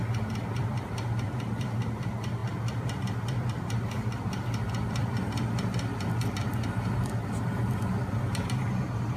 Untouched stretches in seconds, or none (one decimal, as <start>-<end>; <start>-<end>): 0.0-9.2